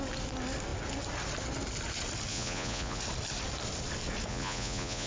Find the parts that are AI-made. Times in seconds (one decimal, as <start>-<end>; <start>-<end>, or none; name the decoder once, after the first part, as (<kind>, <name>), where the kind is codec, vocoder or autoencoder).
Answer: 2.3-3.0 (vocoder, Vocos); 4.3-5.1